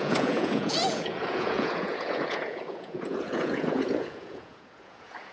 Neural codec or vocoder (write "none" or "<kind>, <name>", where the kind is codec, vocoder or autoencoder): vocoder, Vocos